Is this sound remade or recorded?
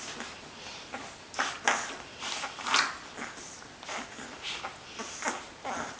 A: recorded